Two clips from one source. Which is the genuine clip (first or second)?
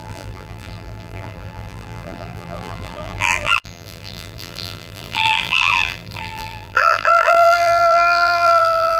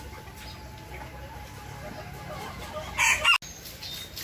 second